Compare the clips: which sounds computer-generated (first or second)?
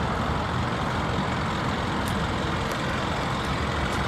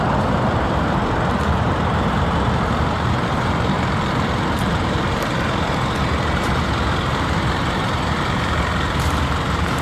second